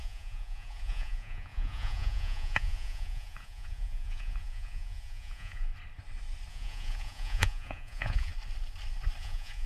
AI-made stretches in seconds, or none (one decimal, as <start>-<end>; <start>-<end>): 0.0-5.7; 6.5-8.3; 9.2-9.7

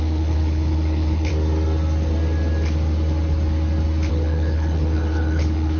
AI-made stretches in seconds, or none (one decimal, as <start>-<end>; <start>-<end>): 0.0-1.3; 4.1-5.8

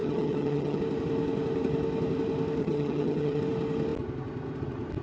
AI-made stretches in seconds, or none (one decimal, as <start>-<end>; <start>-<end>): 0.0-0.8; 2.6-3.4